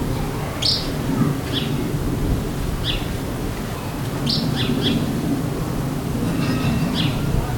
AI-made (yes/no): no